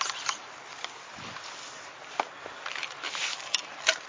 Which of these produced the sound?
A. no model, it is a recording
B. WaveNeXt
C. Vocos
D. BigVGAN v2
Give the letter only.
A